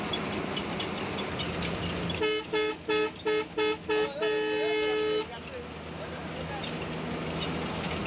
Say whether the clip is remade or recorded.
recorded